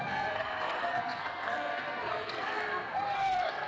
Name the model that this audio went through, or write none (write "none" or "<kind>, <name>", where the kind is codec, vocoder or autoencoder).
codec, SNAC